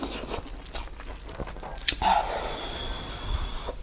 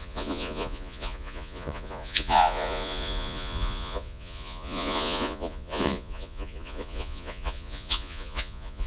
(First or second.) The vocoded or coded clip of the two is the second